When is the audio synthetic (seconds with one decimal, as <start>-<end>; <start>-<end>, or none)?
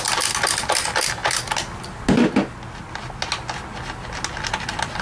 none